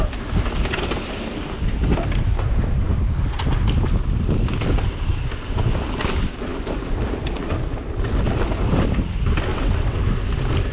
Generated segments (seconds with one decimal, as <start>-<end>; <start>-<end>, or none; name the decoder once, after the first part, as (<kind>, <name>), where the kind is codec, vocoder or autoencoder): 9.5-10.0 (vocoder, WaveNeXt)